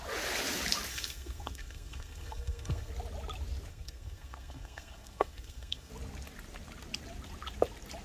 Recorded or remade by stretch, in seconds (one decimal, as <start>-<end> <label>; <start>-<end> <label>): 0.0-0.9 recorded; 0.9-2.9 remade; 2.9-3.7 recorded; 3.7-5.9 remade; 5.9-8.0 recorded